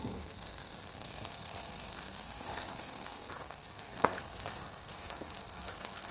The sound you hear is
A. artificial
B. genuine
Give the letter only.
A